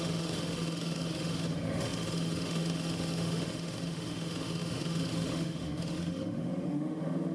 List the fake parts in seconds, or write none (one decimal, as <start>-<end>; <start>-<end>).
0.0-7.3